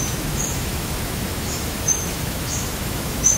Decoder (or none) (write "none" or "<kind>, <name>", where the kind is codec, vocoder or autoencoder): autoencoder, DAC-VAE